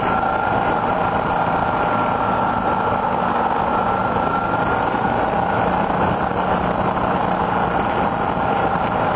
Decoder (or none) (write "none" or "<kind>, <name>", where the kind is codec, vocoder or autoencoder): none